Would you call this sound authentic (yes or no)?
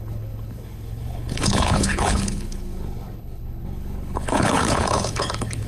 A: no